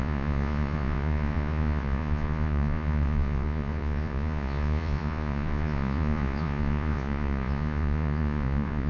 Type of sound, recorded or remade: remade